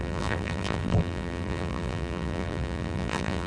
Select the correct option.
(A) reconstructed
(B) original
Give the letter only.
A